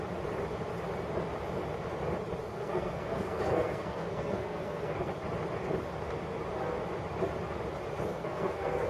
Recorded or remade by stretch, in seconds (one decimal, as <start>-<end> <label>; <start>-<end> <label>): 0.0-2.5 recorded; 2.5-5.1 remade; 5.1-8.1 recorded; 8.1-8.9 remade